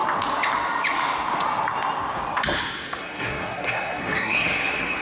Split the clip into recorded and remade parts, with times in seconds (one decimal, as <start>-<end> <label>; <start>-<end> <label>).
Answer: 0.0-3.0 recorded; 3.0-5.0 remade